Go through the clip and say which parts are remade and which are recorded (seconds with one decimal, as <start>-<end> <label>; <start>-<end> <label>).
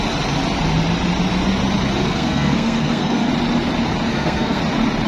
0.0-2.0 recorded; 2.0-3.3 remade; 3.3-4.1 recorded; 4.1-4.6 remade; 4.6-5.1 recorded